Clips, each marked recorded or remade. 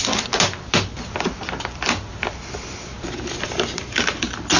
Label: recorded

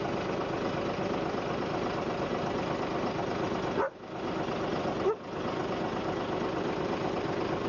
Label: recorded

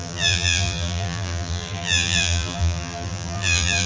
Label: remade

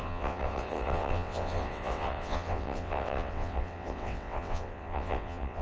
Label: remade